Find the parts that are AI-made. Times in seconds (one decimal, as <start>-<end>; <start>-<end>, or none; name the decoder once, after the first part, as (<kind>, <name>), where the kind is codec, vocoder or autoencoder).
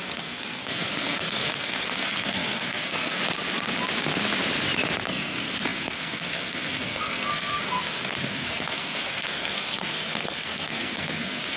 0.0-3.2 (codec, SNAC); 5.1-11.6